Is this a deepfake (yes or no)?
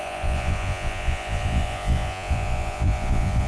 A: yes